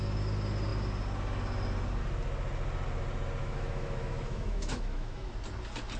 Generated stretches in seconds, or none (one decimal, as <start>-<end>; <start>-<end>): 3.4-5.3